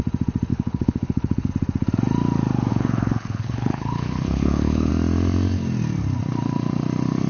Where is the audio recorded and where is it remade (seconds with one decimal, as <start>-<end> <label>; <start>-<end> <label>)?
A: 0.0-0.5 recorded; 0.5-1.5 remade; 1.5-2.7 recorded; 2.7-4.9 remade; 4.9-7.3 recorded